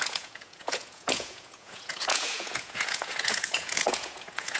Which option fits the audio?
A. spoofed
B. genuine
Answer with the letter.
A